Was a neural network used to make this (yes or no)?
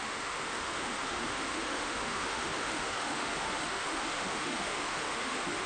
yes